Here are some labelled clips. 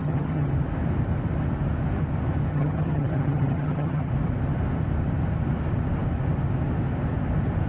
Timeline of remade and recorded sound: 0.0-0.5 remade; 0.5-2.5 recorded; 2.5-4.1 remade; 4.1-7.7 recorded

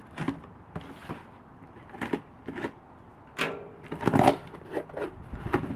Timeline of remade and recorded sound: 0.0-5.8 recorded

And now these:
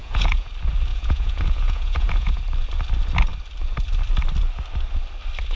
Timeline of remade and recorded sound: 0.0-0.5 remade; 0.5-0.9 recorded; 0.9-2.4 remade; 2.4-5.6 recorded

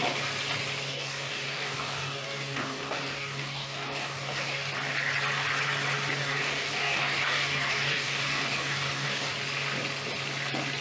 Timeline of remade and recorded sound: 0.0-0.9 recorded; 0.9-4.7 remade; 4.7-6.2 recorded; 6.2-9.3 remade; 9.3-10.8 recorded